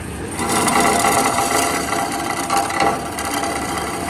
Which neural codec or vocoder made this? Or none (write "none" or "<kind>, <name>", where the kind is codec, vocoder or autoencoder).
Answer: none